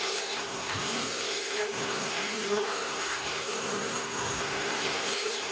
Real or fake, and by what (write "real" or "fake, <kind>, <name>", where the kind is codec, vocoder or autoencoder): fake, codec, SNAC